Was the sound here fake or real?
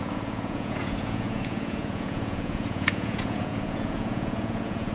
fake